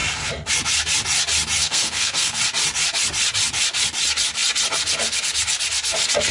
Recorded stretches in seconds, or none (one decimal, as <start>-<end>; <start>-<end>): 0.0-1.6; 2.4-6.3